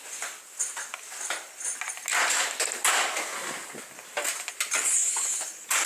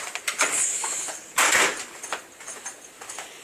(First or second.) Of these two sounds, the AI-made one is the second